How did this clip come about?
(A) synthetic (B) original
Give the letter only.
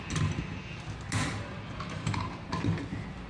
B